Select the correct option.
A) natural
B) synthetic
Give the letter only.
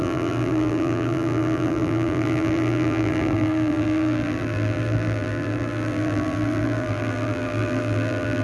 B